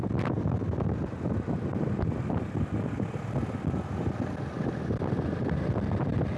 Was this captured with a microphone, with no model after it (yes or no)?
no